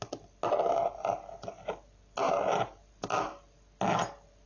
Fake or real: real